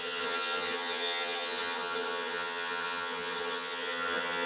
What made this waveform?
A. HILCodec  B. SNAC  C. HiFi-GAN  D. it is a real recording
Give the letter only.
C